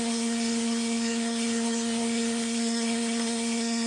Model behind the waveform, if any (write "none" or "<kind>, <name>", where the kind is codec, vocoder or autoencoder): codec, SNAC